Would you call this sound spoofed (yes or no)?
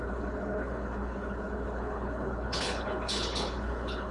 yes